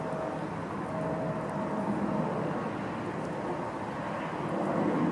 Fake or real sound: real